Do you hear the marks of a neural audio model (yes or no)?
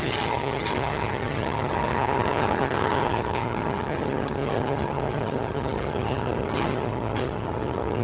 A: yes